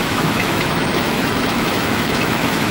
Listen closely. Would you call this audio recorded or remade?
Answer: remade